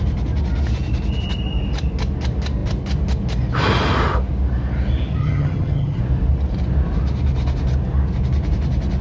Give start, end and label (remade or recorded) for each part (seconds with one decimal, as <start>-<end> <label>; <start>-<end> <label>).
0.0-5.2 recorded; 5.2-6.0 remade; 6.0-9.0 recorded